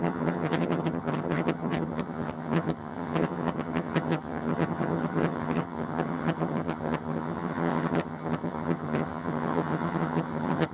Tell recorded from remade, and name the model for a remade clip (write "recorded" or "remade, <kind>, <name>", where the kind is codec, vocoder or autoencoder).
remade, vocoder, HiFi-GAN